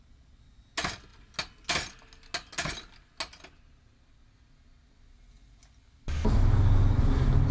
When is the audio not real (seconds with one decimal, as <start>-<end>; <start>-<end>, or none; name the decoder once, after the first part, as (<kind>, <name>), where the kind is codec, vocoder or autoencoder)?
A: none